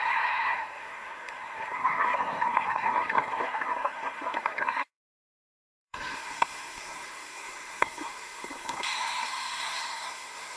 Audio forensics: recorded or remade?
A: remade